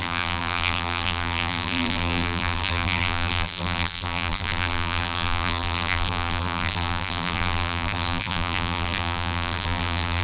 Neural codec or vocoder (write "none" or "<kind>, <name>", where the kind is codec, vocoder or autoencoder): vocoder, BigVGAN v2